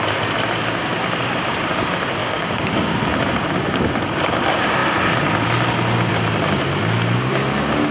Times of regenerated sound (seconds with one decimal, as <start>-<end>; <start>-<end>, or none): 2.2-3.0